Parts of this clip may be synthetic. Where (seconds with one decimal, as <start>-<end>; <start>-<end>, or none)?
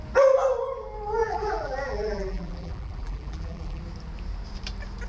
1.2-3.8